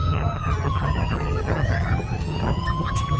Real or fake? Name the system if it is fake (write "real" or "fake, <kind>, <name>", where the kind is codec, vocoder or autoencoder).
fake, vocoder, HiFi-GAN